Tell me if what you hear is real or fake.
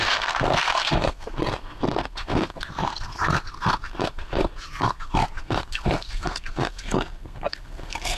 fake